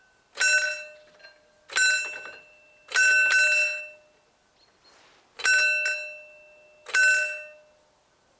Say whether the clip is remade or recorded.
recorded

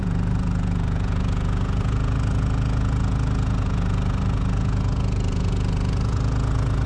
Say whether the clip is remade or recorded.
remade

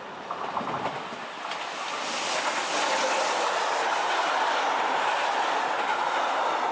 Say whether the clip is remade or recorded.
recorded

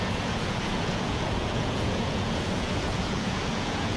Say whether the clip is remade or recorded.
remade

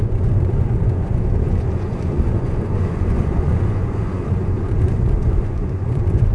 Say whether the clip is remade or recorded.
remade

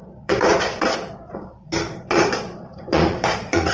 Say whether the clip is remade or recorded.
remade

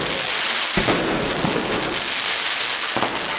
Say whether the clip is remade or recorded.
recorded